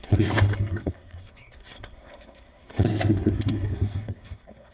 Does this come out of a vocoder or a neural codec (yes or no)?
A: yes